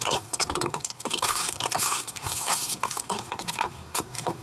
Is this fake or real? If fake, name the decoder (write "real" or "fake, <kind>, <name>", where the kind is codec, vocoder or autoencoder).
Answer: fake, codec, SNAC